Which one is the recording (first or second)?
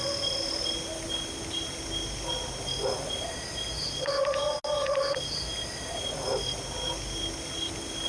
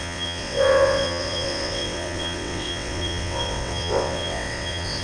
first